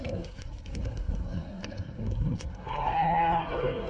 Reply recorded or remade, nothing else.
remade